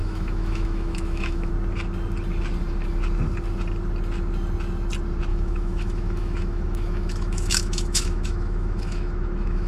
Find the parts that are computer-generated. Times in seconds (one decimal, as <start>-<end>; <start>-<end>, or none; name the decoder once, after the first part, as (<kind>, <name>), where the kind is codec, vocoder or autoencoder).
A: 0.0-1.5 (autoencoder, DAC-VAE); 5.3-9.7